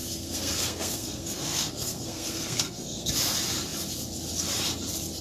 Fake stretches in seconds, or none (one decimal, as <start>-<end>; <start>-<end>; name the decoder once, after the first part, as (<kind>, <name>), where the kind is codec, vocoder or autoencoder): 0.0-3.1 (codec, SNAC)